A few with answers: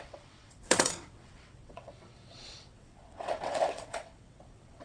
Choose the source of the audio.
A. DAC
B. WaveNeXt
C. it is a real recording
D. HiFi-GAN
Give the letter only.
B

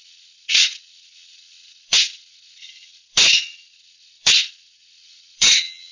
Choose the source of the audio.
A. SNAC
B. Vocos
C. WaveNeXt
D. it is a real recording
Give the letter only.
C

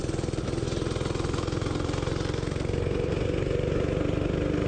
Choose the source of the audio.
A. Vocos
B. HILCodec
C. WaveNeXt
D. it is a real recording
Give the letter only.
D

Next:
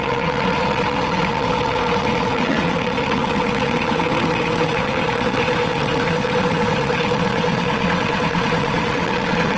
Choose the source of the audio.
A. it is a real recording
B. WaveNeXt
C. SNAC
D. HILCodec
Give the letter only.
B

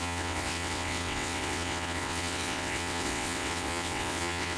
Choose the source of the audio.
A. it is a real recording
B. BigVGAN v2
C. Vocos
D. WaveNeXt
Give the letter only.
D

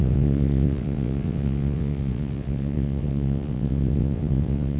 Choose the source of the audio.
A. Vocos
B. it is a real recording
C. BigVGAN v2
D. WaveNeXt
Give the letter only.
D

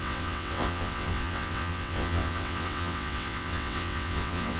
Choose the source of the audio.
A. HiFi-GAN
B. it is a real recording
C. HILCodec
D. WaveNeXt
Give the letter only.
D